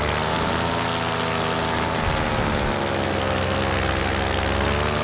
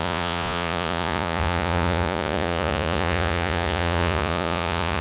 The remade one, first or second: second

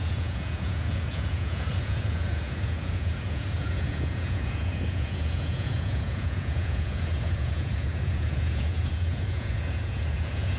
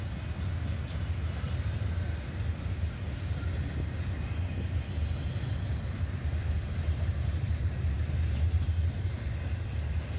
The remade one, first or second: first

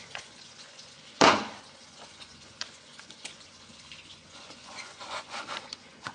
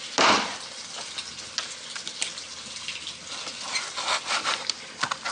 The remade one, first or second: first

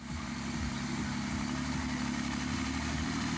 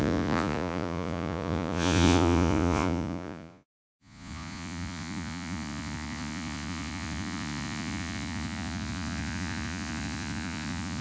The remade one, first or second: second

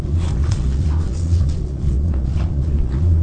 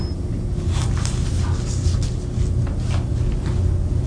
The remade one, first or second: first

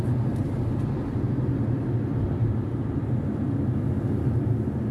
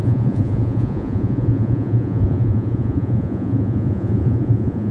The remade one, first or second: second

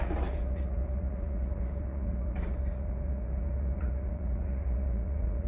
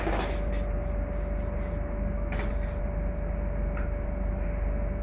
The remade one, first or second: first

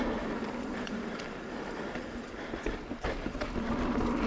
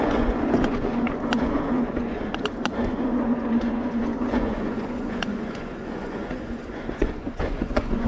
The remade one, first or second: second